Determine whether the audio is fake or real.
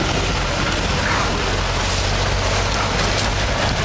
real